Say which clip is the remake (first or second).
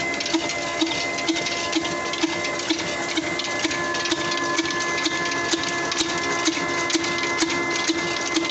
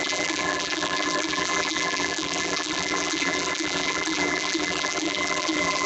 second